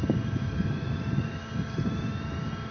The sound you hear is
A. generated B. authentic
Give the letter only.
B